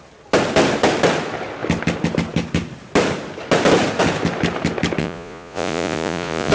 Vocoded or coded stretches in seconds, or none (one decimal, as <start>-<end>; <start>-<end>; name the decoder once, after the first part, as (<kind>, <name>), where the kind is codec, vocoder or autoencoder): 5.0-6.5 (vocoder, Vocos)